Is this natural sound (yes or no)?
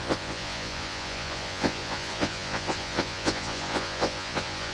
no